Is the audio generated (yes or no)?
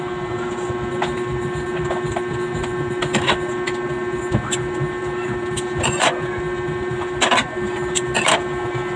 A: no